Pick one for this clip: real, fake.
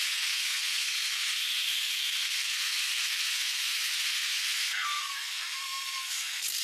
fake